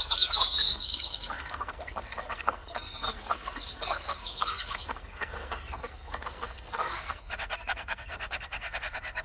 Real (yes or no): no